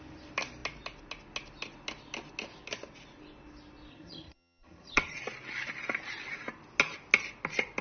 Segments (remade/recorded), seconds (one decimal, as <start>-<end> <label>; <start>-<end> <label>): 0.0-3.9 recorded; 3.9-5.2 remade; 5.2-7.8 recorded

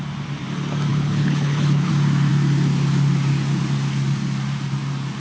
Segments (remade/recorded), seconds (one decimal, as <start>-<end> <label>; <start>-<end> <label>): 0.0-0.9 recorded; 0.9-1.9 remade; 1.9-5.2 recorded

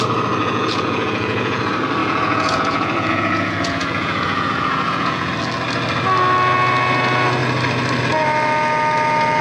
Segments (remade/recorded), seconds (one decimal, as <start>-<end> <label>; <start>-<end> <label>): 0.0-0.4 recorded; 0.4-1.6 remade; 1.6-2.0 recorded; 2.0-5.3 remade; 5.3-9.4 recorded